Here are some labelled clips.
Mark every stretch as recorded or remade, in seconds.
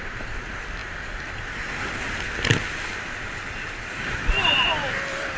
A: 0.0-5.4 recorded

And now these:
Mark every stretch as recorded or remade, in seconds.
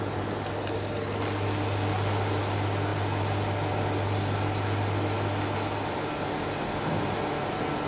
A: 0.0-7.9 recorded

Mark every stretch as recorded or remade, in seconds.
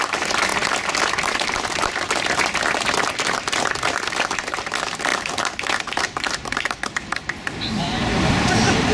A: 0.0-0.5 remade; 0.5-1.1 recorded; 1.1-5.1 remade; 5.1-6.0 recorded; 6.0-7.1 remade; 7.1-7.7 recorded; 7.7-8.9 remade